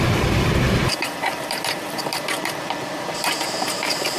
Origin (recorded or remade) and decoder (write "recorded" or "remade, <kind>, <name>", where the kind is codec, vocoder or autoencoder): remade, vocoder, BigVGAN v2